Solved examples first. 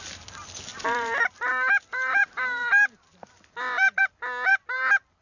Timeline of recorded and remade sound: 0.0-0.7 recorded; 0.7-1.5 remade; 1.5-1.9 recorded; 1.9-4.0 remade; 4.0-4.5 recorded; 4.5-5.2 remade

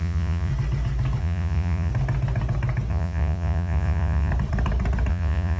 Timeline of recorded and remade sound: 0.0-0.5 remade; 0.5-1.2 recorded; 1.2-1.9 remade; 1.9-2.9 recorded; 2.9-4.3 remade; 4.3-5.1 recorded; 5.1-5.6 remade